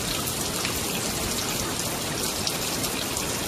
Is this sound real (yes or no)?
yes